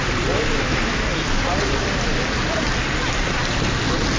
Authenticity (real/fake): real